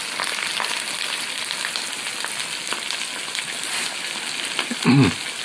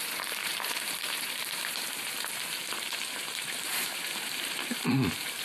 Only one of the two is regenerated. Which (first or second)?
second